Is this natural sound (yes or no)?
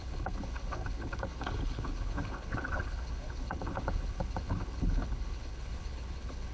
no